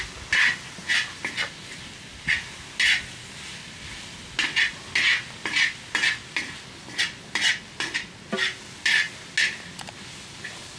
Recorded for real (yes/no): yes